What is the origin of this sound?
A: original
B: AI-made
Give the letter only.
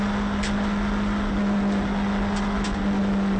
A